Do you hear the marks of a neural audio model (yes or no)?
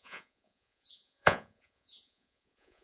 yes